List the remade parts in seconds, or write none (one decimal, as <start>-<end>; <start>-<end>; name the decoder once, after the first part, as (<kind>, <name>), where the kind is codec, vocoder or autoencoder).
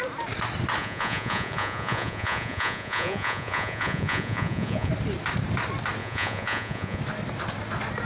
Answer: 0.8-4.9 (vocoder, Vocos); 6.0-7.0